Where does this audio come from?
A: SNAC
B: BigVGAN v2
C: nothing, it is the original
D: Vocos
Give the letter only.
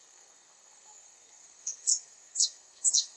A